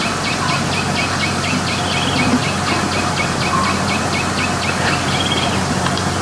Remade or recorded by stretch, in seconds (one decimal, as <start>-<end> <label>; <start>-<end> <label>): 0.0-2.4 recorded; 2.4-3.5 remade; 3.5-6.2 recorded